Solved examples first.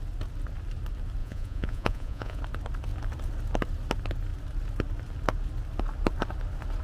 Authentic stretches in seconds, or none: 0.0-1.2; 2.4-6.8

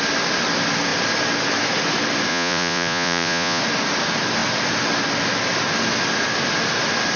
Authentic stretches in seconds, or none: 0.0-2.3; 3.6-7.2

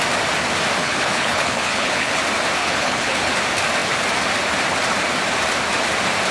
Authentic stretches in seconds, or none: 0.0-0.8; 2.2-2.6; 3.3-6.3

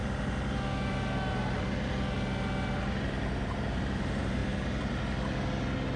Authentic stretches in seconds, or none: 0.0-3.0; 4.4-6.0

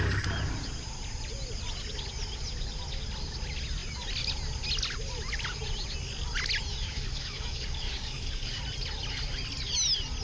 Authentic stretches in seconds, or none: 0.0-6.7; 8.6-10.2

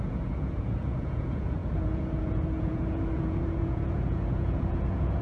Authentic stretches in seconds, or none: none

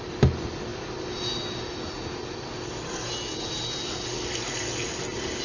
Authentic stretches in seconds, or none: 0.0-5.4